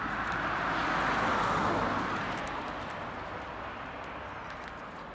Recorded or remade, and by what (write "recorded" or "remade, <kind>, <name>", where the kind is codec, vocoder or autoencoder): recorded